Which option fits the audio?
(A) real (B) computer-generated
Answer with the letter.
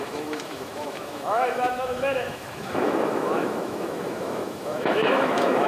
B